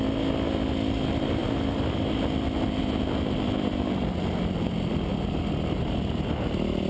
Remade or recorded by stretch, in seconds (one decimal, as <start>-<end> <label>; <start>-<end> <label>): 0.0-6.9 recorded

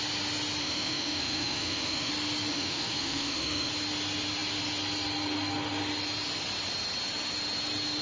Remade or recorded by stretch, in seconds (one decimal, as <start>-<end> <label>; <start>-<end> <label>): 0.0-0.6 recorded; 0.6-2.1 remade; 2.1-2.5 recorded; 2.5-3.7 remade; 3.7-8.0 recorded